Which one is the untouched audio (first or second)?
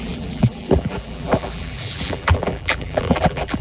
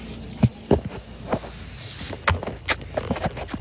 second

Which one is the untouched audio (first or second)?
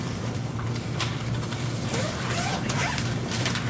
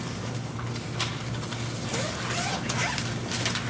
second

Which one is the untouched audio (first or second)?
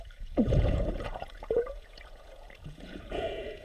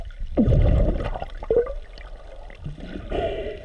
second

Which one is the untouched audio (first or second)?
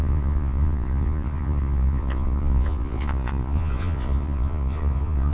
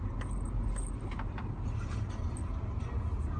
second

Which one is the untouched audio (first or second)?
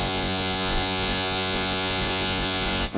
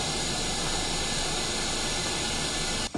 second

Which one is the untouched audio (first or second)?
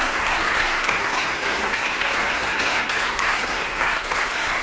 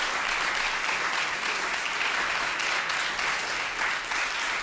second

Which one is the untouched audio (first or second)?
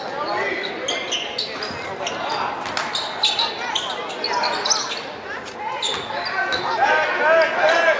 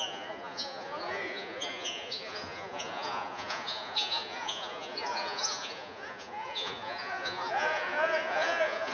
first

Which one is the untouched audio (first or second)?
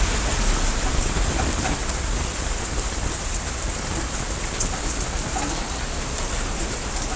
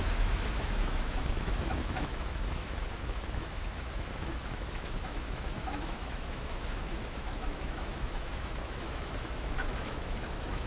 first